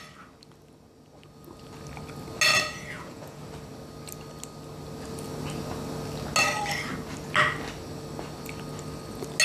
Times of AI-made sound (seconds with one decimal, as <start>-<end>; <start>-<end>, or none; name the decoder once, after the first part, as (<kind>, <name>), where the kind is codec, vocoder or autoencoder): 2.5-3.4 (vocoder, Vocos)